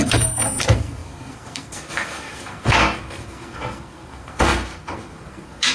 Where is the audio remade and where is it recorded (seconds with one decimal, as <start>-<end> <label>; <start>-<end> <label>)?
0.0-5.7 remade